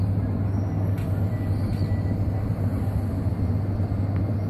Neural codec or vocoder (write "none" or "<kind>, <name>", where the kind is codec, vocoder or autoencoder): none